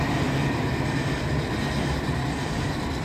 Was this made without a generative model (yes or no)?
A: yes